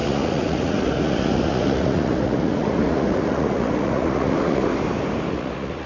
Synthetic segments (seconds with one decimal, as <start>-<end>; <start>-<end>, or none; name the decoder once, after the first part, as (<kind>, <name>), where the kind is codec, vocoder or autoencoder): 0.0-4.7 (vocoder, Vocos); 5.3-5.9